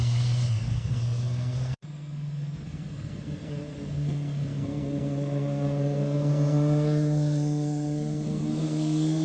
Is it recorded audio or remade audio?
remade